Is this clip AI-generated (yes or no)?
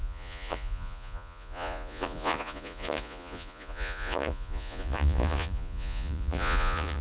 yes